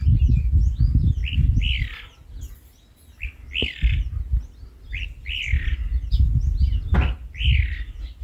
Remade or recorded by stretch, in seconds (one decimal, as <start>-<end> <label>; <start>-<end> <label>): 0.0-8.2 recorded